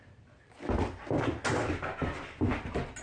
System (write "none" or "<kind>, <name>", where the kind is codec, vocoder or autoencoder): none